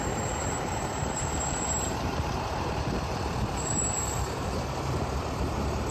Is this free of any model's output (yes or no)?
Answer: no